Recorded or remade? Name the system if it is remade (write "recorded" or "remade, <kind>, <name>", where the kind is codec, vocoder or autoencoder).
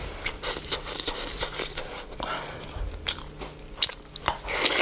recorded